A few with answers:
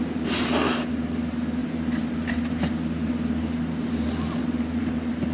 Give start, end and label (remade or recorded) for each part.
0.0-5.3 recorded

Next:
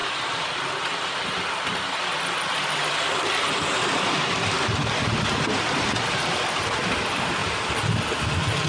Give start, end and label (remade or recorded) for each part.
0.0-1.0 remade; 1.0-8.7 recorded

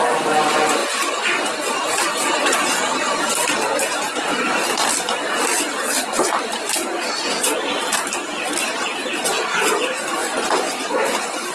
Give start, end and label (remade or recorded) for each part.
0.0-10.2 recorded; 10.2-10.8 remade; 10.8-11.5 recorded